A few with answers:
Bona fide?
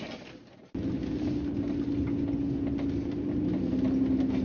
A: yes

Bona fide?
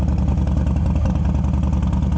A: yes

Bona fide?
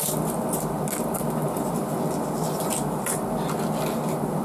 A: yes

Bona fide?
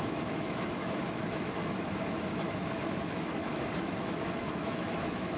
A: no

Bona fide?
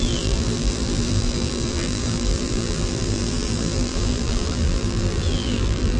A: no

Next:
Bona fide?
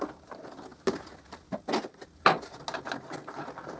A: yes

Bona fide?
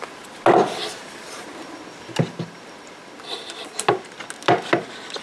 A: yes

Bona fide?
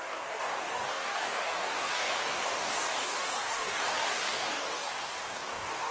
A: no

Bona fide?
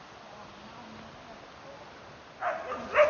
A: yes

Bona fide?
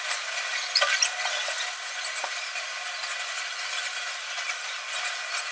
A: yes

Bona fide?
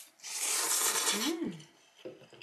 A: yes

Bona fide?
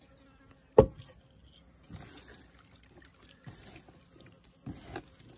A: yes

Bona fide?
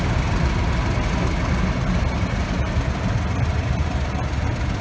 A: yes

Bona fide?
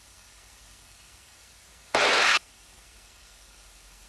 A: no